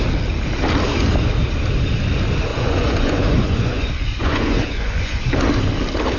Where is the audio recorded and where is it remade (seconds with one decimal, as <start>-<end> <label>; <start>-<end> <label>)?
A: 0.0-2.5 recorded; 2.5-5.2 remade; 5.2-6.2 recorded